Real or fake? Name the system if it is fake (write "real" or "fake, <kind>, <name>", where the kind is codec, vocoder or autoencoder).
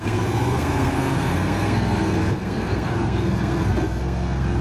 fake, codec, SNAC